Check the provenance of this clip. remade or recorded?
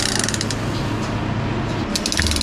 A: recorded